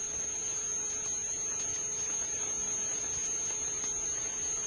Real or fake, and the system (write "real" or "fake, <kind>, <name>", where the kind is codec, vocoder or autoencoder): real